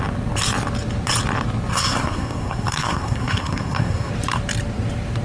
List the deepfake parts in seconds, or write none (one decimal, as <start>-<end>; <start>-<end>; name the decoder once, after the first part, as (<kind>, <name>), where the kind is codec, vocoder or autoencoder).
1.7-4.1 (codec, SNAC)